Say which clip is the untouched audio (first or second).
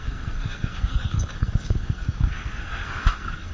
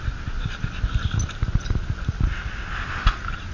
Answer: second